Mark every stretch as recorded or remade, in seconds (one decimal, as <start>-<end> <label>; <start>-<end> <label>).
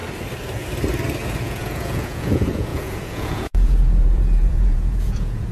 0.0-1.4 recorded; 1.4-5.5 remade